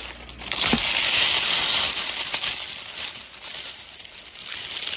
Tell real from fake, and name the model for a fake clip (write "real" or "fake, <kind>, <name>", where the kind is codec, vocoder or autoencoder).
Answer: real